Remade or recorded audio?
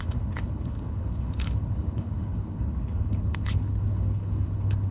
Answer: remade